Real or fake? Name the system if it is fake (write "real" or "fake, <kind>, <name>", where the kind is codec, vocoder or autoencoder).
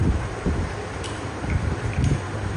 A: fake, vocoder, BigVGAN v2